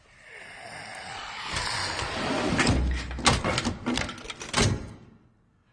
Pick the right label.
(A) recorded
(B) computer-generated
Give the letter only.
A